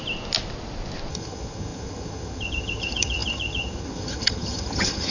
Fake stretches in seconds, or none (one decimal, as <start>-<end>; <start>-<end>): 1.1-5.1